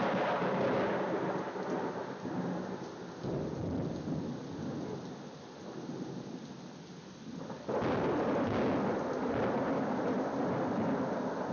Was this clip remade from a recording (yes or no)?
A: no